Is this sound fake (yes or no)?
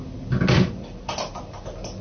no